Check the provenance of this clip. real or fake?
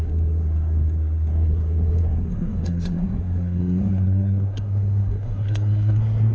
fake